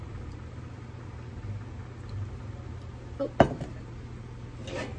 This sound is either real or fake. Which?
real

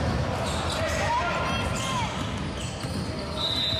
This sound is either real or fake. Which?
real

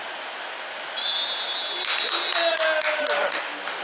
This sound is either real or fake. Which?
real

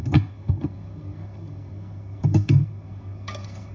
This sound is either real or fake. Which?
fake